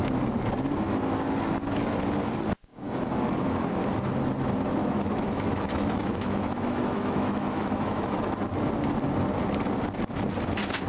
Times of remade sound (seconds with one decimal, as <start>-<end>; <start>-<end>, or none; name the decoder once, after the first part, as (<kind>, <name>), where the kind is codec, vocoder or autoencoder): 2.7-3.7 (autoencoder, DAC-VAE); 4.8-8.4